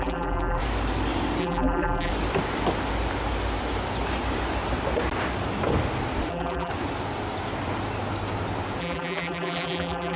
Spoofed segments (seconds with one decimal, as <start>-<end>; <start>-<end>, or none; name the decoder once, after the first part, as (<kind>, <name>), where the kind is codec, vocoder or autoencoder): 0.0-0.6 (vocoder, BigVGAN v2); 1.4-2.1; 6.3-6.7; 8.8-10.2